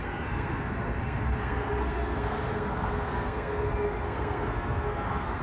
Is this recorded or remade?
remade